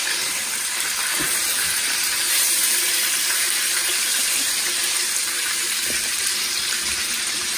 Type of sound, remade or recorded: remade